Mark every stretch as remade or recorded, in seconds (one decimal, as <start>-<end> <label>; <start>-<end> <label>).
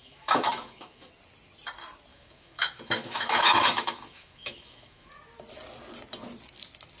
0.0-1.1 remade; 1.1-2.1 recorded; 2.1-5.1 remade; 5.1-7.0 recorded